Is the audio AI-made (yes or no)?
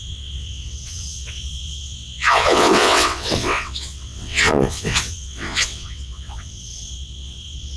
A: yes